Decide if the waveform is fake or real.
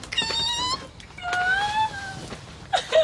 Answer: real